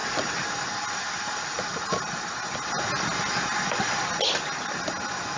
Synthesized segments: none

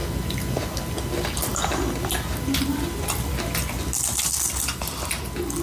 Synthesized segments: none

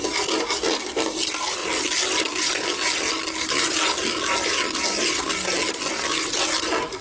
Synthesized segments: none

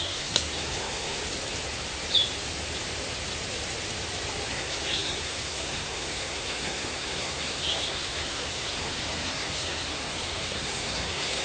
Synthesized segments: 0.0-1.2 (codec, SNAC); 4.5-11.4

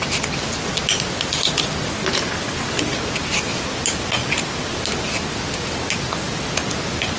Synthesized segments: none